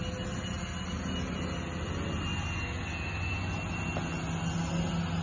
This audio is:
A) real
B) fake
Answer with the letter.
A